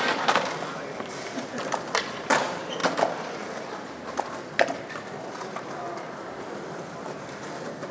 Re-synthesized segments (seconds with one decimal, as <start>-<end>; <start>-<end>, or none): none